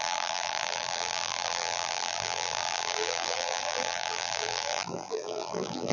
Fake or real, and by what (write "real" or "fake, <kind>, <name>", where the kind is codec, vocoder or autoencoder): fake, vocoder, BigVGAN v2